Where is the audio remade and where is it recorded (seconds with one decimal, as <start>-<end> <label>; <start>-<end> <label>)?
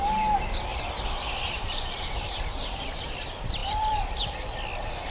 0.0-0.7 recorded; 0.7-2.4 remade; 2.4-3.6 recorded; 3.6-4.3 remade; 4.3-5.1 recorded